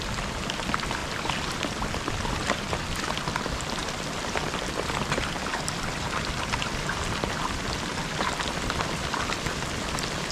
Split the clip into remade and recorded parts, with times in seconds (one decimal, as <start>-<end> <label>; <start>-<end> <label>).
0.0-10.3 remade